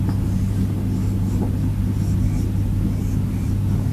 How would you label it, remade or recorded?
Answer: recorded